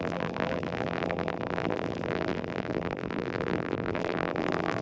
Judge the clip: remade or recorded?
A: remade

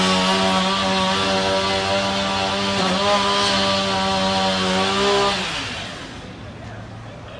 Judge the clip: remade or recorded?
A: recorded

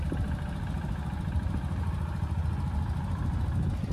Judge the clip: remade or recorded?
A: recorded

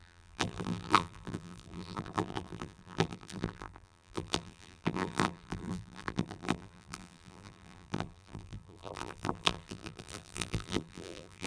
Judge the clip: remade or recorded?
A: remade